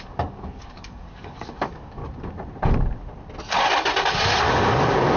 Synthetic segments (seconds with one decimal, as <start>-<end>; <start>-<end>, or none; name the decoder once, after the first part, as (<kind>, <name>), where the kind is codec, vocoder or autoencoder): 0.0-2.0 (codec, DAC); 4.5-5.2